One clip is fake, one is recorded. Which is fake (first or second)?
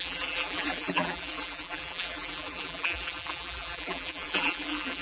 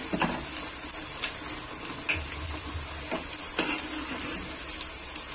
first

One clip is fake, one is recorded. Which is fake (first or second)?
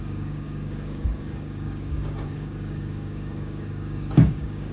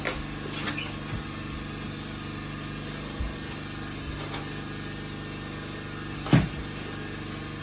first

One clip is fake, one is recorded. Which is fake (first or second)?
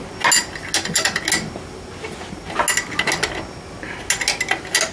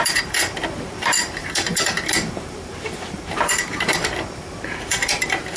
second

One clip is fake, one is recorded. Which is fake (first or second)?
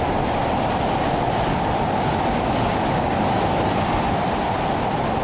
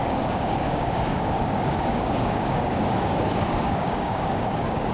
second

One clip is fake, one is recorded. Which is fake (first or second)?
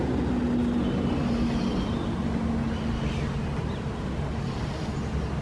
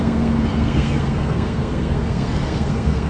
second